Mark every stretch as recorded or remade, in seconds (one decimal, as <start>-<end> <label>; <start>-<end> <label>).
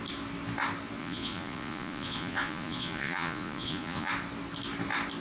0.0-1.0 recorded; 1.0-4.1 remade; 4.1-5.2 recorded